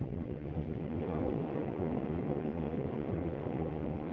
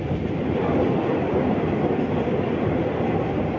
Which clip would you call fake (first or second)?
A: first